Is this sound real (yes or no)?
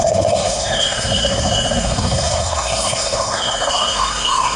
no